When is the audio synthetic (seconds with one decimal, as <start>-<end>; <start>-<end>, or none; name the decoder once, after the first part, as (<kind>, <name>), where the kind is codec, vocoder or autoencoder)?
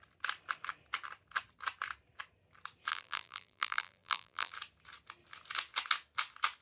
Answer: 2.9-4.5 (vocoder, BigVGAN v2)